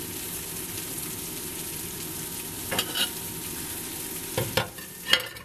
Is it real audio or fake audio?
fake